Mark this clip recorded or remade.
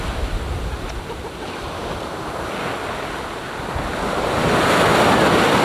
recorded